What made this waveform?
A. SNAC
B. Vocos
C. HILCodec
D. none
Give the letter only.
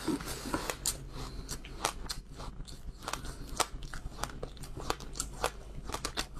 D